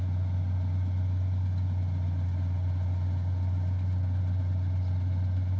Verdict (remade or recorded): recorded